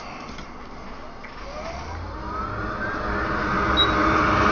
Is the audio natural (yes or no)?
yes